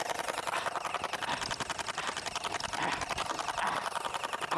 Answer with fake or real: real